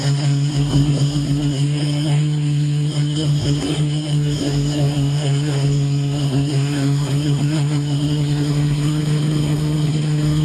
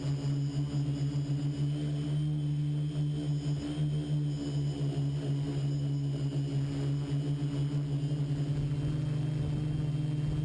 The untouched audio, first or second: second